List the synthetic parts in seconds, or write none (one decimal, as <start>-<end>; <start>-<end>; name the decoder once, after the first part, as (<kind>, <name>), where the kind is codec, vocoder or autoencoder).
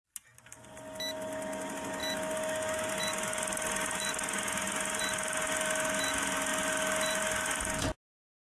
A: none